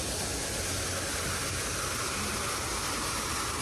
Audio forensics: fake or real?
real